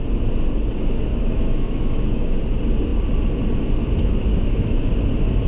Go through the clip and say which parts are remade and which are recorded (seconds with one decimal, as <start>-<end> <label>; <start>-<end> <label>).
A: 0.0-1.1 recorded; 1.1-2.4 remade; 2.4-4.3 recorded; 4.3-4.9 remade; 4.9-5.5 recorded

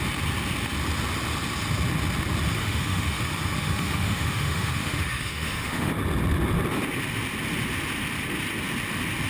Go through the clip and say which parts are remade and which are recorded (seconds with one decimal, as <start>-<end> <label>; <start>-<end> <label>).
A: 0.0-2.6 recorded; 2.6-3.2 remade; 3.2-3.6 recorded; 3.6-5.9 remade; 5.9-9.3 recorded

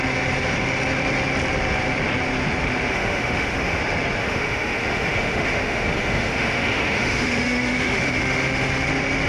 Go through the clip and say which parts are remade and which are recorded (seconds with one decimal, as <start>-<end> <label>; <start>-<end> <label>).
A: 0.0-2.9 recorded; 2.9-3.8 remade; 3.8-4.2 recorded; 4.2-8.9 remade; 8.9-9.3 recorded

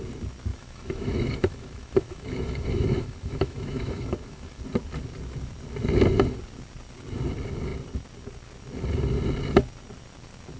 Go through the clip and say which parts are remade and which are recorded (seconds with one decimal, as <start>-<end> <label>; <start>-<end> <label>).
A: 0.0-0.5 recorded; 0.5-4.6 remade; 4.6-10.6 recorded

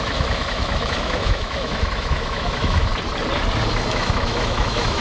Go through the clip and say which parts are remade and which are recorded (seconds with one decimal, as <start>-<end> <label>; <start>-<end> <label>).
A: 0.0-2.9 remade; 2.9-3.9 recorded; 3.9-5.0 remade

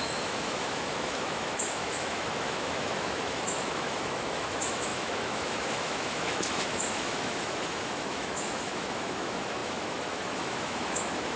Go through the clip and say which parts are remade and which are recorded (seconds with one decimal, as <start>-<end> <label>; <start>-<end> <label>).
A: 0.0-11.4 remade

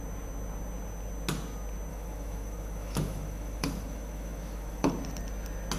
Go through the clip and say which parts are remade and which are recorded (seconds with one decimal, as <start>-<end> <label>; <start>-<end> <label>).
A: 0.0-1.9 recorded; 1.9-4.9 remade; 4.9-5.8 recorded

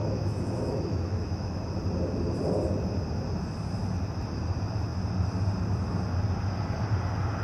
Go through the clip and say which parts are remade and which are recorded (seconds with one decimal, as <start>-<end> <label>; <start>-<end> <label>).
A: 0.0-1.6 remade; 1.6-7.4 recorded